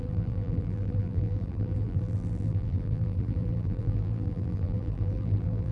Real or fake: fake